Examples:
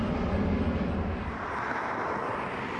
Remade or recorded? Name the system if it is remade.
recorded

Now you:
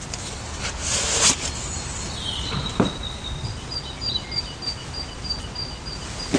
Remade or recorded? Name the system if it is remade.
recorded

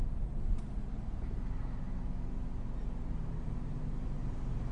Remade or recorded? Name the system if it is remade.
recorded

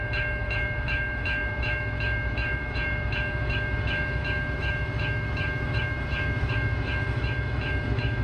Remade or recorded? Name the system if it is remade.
remade, autoencoder, DAC-VAE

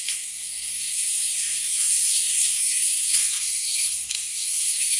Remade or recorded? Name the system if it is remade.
remade, codec, SNAC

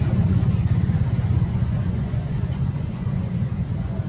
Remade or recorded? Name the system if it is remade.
remade, vocoder, Vocos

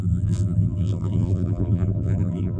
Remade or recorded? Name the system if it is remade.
remade, vocoder, BigVGAN v2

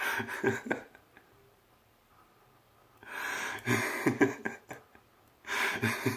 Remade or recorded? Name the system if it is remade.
recorded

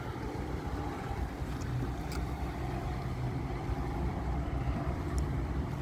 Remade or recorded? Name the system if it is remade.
remade, vocoder, BigVGAN v2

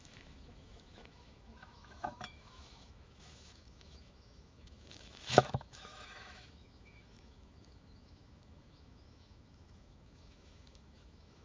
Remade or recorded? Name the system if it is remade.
remade, autoencoder, DAC-VAE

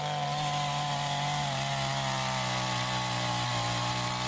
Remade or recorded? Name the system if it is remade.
recorded